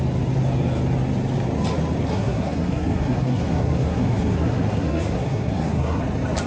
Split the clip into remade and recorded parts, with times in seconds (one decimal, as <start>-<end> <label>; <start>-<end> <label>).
0.0-2.1 recorded; 2.1-6.0 remade; 6.0-6.5 recorded